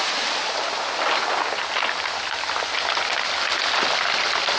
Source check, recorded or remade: recorded